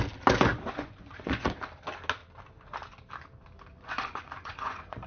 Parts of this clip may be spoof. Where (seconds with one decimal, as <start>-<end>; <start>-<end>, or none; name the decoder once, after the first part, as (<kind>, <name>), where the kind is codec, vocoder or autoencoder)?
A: 0.5-1.6 (vocoder, Vocos); 3.7-5.1